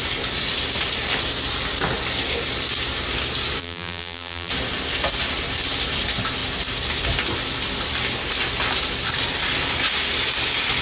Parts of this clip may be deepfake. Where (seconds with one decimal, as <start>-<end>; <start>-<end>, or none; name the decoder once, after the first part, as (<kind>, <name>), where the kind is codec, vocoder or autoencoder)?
3.6-4.5 (vocoder, BigVGAN v2)